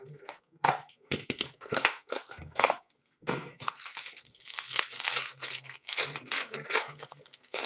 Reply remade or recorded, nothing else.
remade